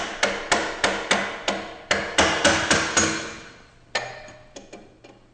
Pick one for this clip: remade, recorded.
recorded